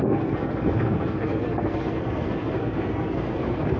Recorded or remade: remade